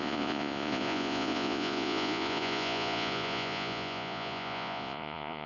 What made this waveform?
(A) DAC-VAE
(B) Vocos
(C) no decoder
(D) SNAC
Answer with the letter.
B